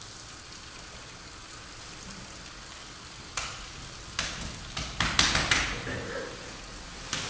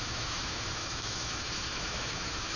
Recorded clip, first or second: first